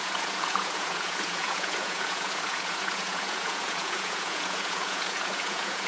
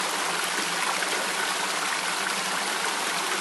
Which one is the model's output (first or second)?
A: first